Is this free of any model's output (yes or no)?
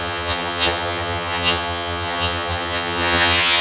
no